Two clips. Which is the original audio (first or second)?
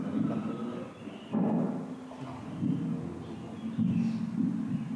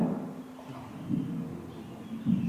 first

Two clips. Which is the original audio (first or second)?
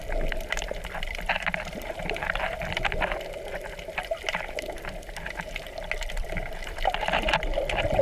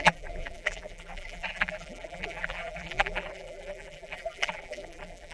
first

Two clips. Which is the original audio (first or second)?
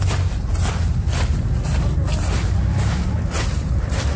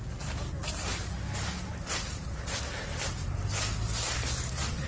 second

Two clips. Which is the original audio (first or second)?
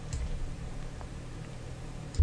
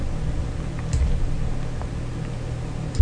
second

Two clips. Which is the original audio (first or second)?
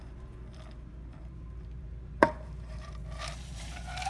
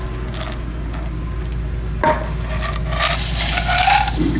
second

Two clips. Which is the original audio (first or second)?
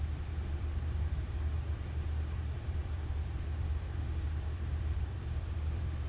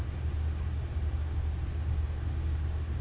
second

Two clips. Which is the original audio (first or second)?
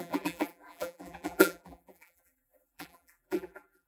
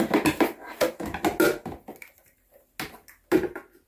second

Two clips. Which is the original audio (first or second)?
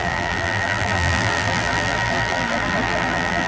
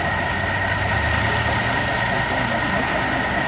second